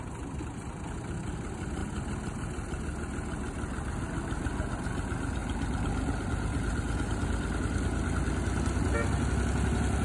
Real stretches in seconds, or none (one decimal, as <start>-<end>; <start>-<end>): 0.0-10.0